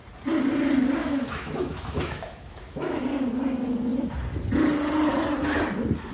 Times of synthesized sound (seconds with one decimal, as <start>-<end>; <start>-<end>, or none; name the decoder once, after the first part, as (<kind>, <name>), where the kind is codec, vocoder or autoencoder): 1.0-3.0 (autoencoder, DAC-VAE)